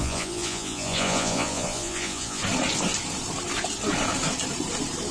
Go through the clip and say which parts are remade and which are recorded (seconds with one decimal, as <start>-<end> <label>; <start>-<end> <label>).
0.0-2.4 remade; 2.4-5.1 recorded